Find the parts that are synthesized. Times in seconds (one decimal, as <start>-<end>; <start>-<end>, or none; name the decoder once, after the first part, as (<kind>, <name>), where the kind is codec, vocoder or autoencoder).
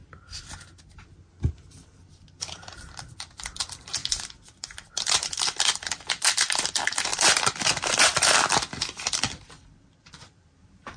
1.5-11.0 (vocoder, BigVGAN v2)